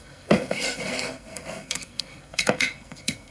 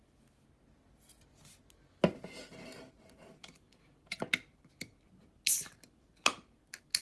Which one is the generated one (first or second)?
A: first